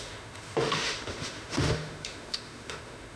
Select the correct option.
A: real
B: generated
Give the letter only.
B